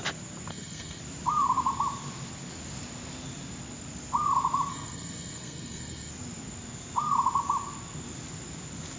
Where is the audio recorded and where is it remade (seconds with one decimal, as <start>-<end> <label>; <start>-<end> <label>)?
0.0-0.5 recorded; 0.5-1.0 remade; 1.0-4.7 recorded; 4.7-6.1 remade; 6.1-9.0 recorded